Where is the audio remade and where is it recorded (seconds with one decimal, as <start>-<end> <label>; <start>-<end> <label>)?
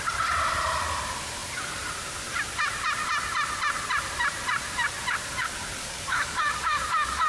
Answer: 0.0-5.8 recorded; 5.8-7.3 remade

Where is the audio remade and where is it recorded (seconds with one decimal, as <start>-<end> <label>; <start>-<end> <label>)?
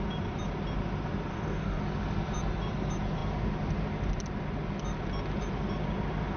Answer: 0.0-1.3 recorded; 1.3-1.8 remade; 1.8-6.4 recorded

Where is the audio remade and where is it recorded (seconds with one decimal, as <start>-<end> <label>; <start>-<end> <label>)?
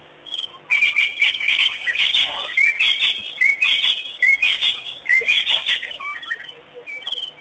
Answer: 0.0-0.5 remade; 0.5-1.3 recorded; 1.3-2.5 remade; 2.5-4.1 recorded; 4.1-6.1 remade; 6.1-7.4 recorded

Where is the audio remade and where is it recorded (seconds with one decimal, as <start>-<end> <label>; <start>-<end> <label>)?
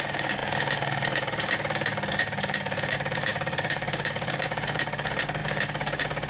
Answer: 0.0-6.3 remade